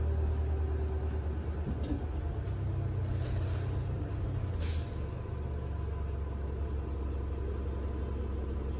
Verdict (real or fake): real